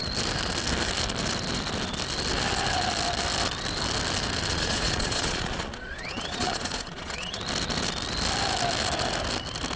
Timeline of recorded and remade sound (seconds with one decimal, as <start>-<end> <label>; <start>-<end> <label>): 0.0-4.5 recorded; 4.5-7.4 remade; 7.4-9.8 recorded